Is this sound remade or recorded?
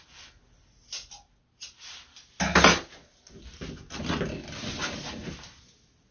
recorded